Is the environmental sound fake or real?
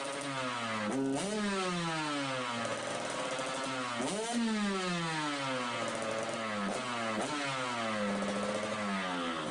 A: real